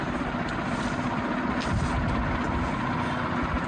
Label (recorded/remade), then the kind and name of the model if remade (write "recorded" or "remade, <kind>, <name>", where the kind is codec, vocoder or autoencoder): recorded